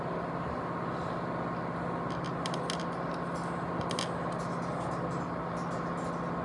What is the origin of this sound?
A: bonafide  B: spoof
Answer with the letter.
A